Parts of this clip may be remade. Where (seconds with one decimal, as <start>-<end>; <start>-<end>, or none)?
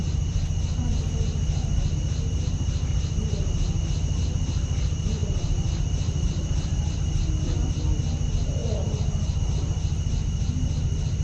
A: 0.0-0.9; 5.2-7.3; 8.6-9.4